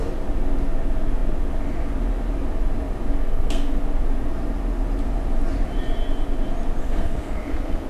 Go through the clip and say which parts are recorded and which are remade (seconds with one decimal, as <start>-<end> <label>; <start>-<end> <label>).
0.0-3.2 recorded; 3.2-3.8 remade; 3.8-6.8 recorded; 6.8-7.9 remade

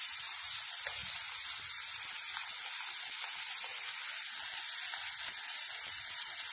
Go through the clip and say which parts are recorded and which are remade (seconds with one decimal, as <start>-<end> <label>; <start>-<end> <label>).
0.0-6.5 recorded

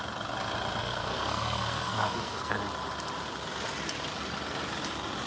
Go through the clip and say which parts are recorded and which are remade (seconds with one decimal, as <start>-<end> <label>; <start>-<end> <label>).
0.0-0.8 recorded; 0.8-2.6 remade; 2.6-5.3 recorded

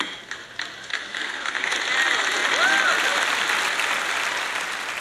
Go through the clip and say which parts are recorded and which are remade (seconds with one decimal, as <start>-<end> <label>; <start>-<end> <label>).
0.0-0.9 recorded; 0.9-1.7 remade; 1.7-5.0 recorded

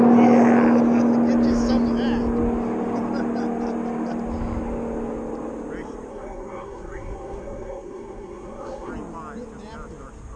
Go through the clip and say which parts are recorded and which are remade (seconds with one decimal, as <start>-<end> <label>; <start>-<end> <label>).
0.0-6.1 recorded; 6.1-8.9 remade; 8.9-10.4 recorded